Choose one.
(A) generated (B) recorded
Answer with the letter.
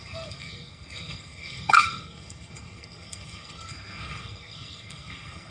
A